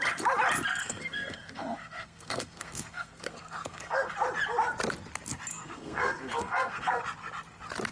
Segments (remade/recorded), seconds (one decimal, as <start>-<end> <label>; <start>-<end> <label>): 0.0-0.8 recorded; 0.8-4.1 remade; 4.1-5.5 recorded; 5.5-7.0 remade; 7.0-7.9 recorded